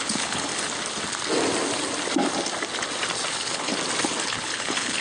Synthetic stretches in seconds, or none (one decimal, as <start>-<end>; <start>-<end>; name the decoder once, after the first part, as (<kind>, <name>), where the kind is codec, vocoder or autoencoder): 0.0-0.5 (codec, HILCodec); 3.3-3.7; 4.2-5.0

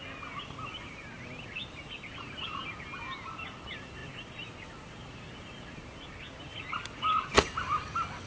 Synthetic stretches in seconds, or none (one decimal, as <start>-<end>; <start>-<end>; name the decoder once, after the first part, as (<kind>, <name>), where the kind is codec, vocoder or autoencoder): none

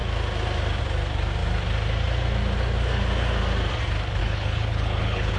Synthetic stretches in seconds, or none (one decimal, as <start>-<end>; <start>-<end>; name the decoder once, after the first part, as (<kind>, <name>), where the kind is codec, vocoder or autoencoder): 4.2-5.4 (codec, HILCodec)

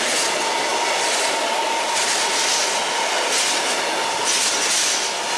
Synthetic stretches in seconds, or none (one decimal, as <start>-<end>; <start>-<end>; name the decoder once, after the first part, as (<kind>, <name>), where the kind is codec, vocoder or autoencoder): none

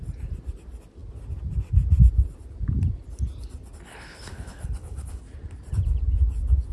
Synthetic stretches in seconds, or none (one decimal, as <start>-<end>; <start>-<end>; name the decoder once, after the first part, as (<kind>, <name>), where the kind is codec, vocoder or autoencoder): 3.9-5.2 (codec, HILCodec)

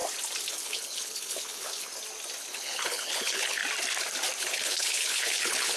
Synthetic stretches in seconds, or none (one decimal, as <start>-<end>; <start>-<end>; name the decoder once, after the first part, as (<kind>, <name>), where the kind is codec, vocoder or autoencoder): 0.5-1.9 (codec, HILCodec); 2.5-3.6; 4.4-5.8